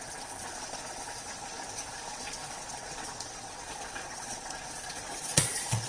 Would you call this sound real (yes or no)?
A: no